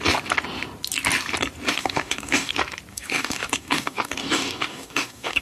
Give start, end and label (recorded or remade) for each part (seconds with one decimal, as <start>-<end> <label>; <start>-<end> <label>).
0.0-1.8 recorded; 1.8-2.5 remade; 2.5-2.9 recorded; 2.9-5.4 remade